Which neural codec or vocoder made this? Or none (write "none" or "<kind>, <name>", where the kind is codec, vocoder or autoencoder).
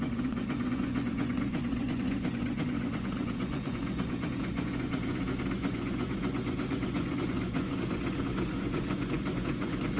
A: vocoder, Vocos